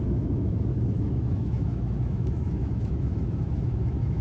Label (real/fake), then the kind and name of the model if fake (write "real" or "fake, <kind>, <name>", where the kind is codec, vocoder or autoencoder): fake, autoencoder, DAC-VAE